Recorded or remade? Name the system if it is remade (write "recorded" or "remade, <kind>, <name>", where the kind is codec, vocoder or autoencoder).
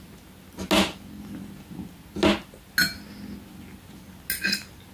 recorded